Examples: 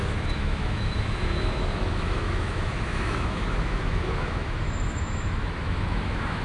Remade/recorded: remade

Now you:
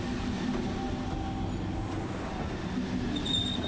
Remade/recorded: recorded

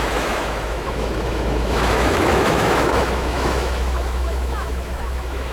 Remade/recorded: remade